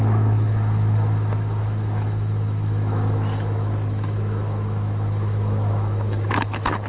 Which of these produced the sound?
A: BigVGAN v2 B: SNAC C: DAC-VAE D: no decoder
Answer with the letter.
C